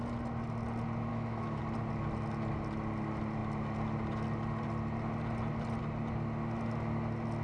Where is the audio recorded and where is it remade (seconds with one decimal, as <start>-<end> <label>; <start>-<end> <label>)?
0.0-1.1 recorded; 1.1-1.6 remade; 1.6-7.4 recorded